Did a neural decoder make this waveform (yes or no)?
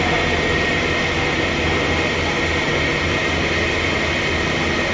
no